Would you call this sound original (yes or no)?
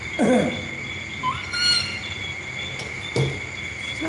yes